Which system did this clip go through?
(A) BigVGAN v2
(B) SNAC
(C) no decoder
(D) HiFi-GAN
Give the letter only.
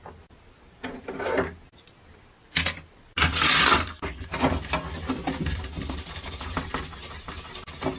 C